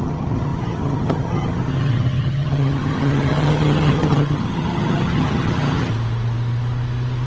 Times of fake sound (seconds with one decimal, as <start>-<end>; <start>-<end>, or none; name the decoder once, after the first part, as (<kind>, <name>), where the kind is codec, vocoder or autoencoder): 0.0-5.9 (vocoder, HiFi-GAN)